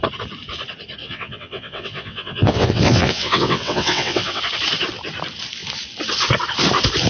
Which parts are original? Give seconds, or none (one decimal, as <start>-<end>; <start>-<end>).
0.0-1.0; 4.4-7.1